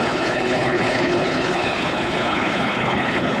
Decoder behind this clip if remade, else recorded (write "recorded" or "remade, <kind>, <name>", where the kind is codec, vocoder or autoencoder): remade, codec, HILCodec